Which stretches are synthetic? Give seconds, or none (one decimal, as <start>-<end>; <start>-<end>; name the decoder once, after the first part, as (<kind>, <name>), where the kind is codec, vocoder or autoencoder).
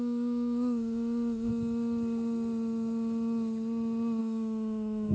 0.0-1.5 (autoencoder, DAC-VAE); 4.2-5.1